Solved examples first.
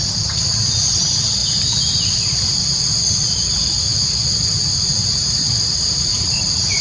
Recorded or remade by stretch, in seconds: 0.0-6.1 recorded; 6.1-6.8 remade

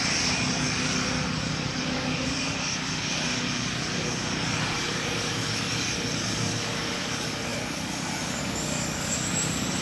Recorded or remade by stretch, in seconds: 0.0-9.8 remade

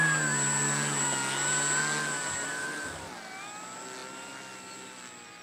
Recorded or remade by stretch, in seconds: 0.0-5.4 recorded

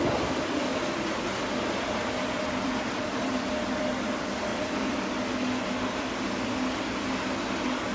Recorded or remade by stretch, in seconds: 0.0-0.7 recorded; 0.7-3.8 remade; 3.8-4.5 recorded; 4.5-5.0 remade; 5.0-7.9 recorded